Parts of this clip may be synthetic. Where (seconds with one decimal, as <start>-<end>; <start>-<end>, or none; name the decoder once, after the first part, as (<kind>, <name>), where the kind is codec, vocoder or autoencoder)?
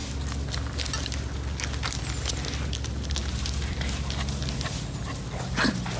3.2-4.4 (vocoder, BigVGAN v2)